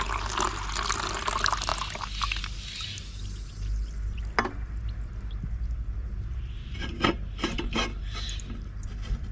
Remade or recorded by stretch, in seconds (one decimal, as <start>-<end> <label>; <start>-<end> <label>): 0.0-9.3 recorded